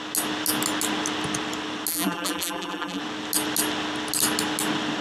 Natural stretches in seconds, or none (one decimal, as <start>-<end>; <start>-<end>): 0.0-1.9; 3.0-5.0